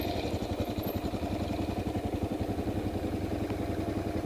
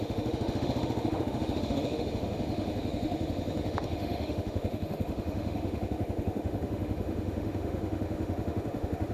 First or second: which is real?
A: first